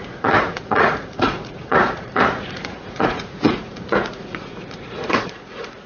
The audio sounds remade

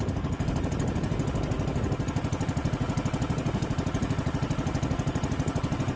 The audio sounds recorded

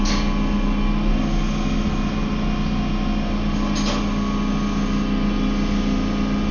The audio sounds recorded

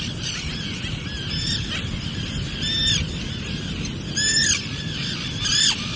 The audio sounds recorded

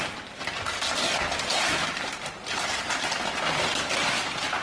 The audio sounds recorded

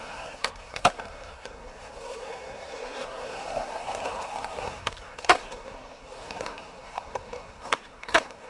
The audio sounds remade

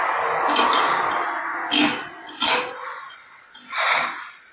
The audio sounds recorded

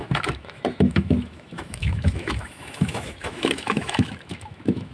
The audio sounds remade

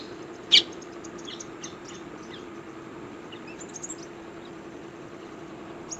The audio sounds recorded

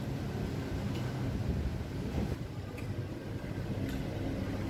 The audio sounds recorded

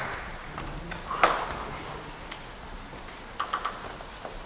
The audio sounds recorded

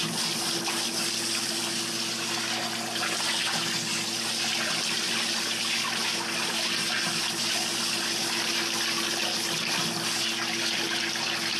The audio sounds recorded